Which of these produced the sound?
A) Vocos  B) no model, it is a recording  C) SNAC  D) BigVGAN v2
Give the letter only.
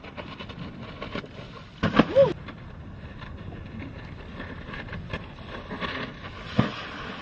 B